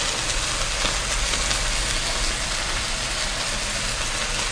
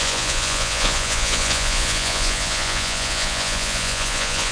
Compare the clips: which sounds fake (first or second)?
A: second